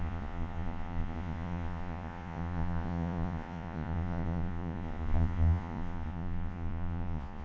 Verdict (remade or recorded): remade